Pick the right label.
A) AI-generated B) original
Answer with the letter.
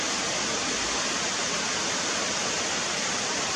B